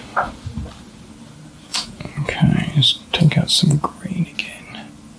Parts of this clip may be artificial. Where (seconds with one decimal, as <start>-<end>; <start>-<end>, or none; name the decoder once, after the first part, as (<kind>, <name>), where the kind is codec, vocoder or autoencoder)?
1.7-4.0 (vocoder, Vocos)